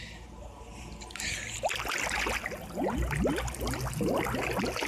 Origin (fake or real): real